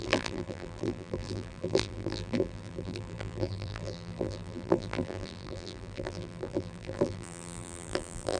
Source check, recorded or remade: remade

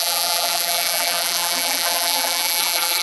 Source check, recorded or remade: remade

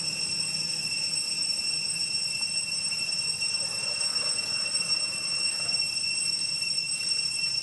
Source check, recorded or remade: remade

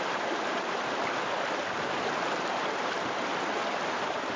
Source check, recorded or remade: remade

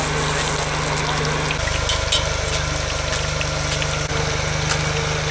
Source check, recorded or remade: recorded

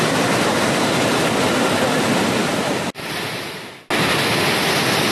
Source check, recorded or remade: recorded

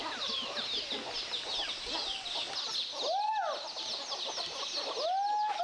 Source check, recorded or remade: recorded